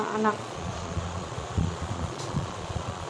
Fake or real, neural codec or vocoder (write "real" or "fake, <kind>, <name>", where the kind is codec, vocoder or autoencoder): fake, vocoder, Vocos